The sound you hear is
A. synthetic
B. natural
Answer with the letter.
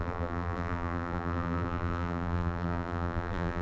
A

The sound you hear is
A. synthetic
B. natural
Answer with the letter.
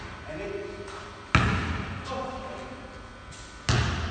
B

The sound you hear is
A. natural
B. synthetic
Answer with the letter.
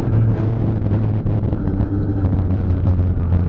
B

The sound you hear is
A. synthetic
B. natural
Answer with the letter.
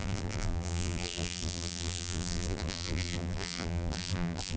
A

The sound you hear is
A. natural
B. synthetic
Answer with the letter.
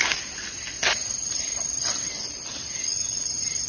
A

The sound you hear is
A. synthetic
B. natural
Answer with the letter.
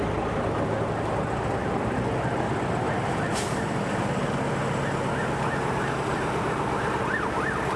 B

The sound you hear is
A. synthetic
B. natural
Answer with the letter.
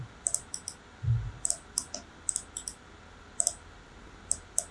B